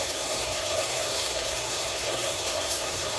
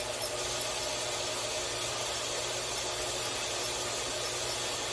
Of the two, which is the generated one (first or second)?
first